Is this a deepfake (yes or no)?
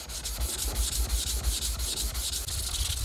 no